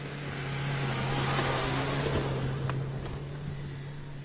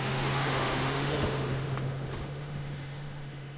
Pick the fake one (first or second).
second